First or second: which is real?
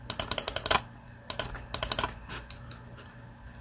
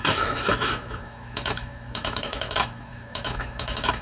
first